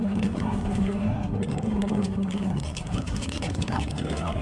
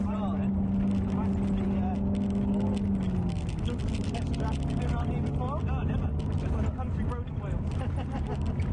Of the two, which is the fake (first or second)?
first